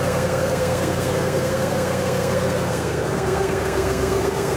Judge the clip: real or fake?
fake